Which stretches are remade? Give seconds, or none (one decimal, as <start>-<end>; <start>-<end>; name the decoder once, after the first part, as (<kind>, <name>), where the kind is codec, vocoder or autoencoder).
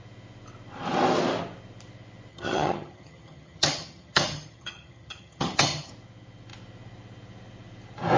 2.3-5.9 (vocoder, HiFi-GAN)